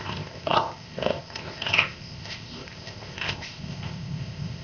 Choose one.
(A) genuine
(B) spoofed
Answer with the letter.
B